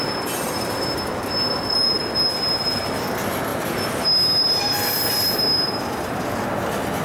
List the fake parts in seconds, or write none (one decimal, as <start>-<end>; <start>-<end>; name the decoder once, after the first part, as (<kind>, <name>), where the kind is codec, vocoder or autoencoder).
none